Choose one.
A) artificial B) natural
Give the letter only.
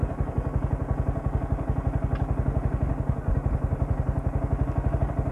B